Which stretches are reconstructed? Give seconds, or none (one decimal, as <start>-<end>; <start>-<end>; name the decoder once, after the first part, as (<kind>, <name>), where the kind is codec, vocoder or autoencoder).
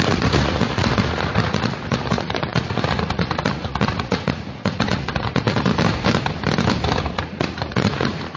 0.0-5.7 (vocoder, Vocos); 7.0-8.4